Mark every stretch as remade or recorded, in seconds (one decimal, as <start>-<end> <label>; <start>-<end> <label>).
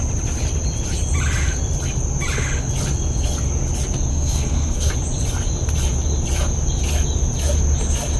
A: 0.0-4.1 recorded; 4.1-4.9 remade; 4.9-8.2 recorded